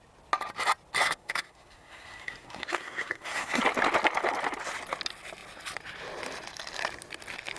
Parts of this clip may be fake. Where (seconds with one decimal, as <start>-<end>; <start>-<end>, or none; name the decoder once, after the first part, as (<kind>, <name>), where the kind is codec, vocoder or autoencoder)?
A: 1.0-3.6 (codec, SNAC)